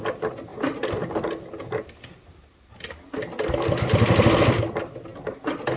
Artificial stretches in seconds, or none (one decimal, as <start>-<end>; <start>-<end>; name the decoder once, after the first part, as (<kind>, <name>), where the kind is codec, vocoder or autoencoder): none